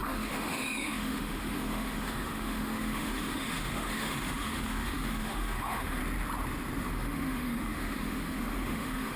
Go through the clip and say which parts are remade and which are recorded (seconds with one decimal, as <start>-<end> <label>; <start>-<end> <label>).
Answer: 0.0-6.0 remade; 6.0-6.8 recorded; 6.8-9.2 remade